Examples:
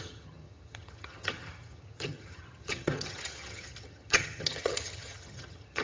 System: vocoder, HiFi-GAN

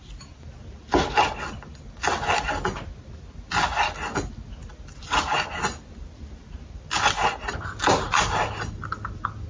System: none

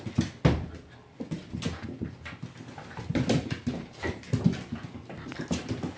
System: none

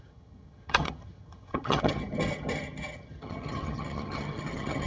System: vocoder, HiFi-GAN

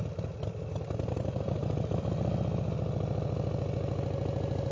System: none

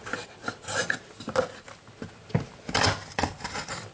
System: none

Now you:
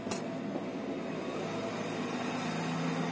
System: none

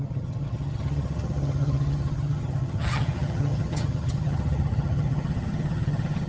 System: vocoder, HiFi-GAN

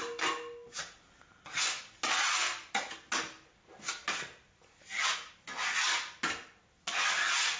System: none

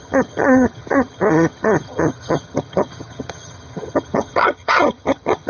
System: vocoder, HiFi-GAN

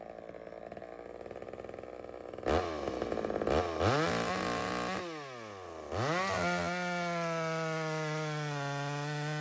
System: none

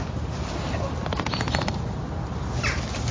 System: none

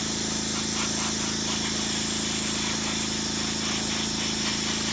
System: none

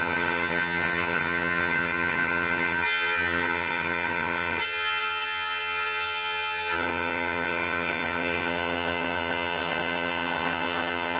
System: vocoder, HiFi-GAN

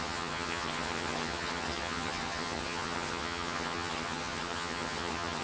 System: vocoder, HiFi-GAN